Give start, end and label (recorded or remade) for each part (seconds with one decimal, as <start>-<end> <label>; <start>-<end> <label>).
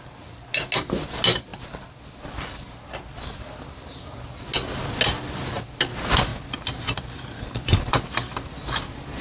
0.0-6.3 recorded; 6.3-8.5 remade; 8.5-9.2 recorded